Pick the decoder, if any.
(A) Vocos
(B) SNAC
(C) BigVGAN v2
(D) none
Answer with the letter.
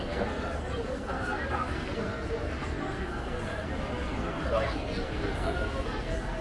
B